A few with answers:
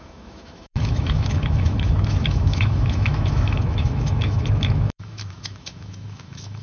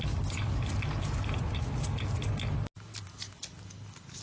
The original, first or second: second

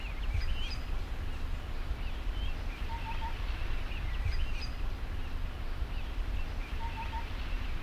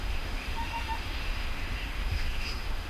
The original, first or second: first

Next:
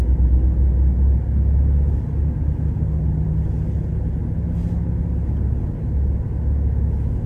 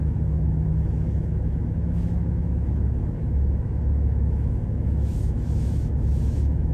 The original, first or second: first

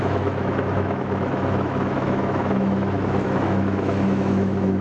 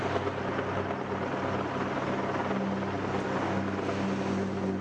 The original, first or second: second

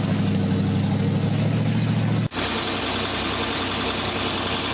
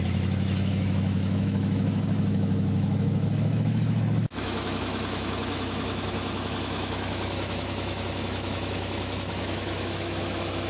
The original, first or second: first